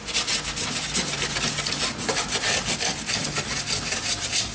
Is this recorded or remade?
recorded